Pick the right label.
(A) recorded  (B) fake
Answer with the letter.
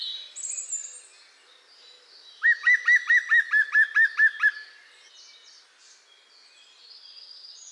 A